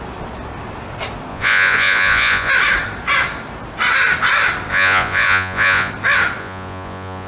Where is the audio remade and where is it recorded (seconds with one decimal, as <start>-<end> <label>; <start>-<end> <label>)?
0.0-1.3 recorded; 1.3-2.5 remade; 2.5-4.7 recorded; 4.7-5.9 remade; 5.9-6.4 recorded; 6.4-7.3 remade